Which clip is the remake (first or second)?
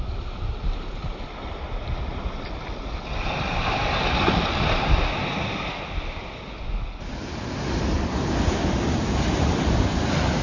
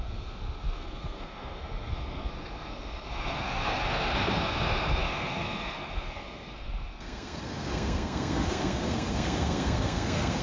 second